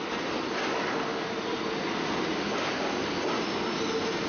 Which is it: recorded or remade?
recorded